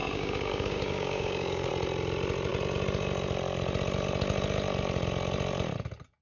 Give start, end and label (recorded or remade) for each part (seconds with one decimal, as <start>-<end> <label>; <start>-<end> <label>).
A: 0.0-1.7 remade; 1.7-6.2 recorded